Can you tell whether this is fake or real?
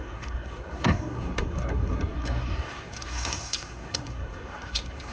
fake